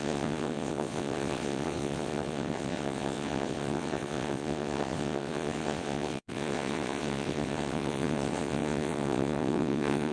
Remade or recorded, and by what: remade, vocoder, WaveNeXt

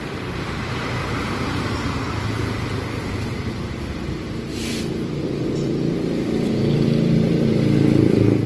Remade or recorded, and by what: remade, vocoder, BigVGAN v2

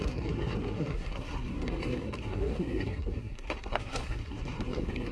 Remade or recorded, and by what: remade, codec, SNAC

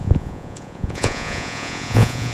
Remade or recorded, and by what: remade, vocoder, Vocos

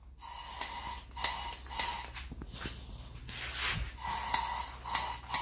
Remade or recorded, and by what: recorded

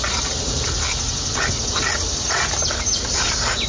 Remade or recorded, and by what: recorded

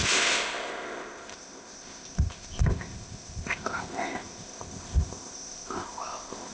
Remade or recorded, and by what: remade, codec, ZipCodec